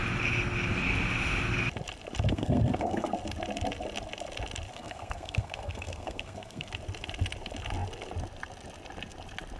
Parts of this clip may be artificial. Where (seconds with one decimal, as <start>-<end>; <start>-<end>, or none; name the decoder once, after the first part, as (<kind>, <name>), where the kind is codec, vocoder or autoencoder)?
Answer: 2.3-3.1 (codec, SNAC); 4.7-6.7